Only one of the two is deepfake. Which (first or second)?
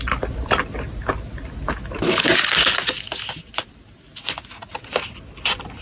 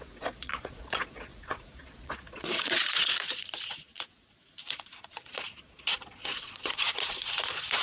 second